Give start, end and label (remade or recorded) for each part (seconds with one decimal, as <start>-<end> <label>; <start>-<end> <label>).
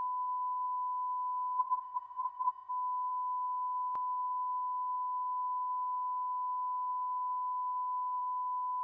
0.0-1.6 recorded; 1.6-2.7 remade; 2.7-8.8 recorded